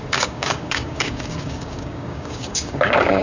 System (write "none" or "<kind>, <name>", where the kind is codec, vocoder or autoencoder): codec, DAC